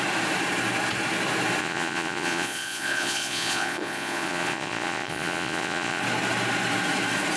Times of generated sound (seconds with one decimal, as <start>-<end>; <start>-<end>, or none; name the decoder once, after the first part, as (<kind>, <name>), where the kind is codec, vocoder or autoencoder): 1.6-6.0 (vocoder, Vocos)